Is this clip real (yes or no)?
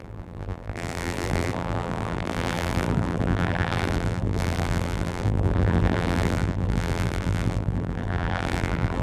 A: no